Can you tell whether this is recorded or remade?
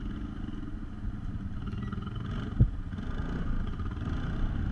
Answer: recorded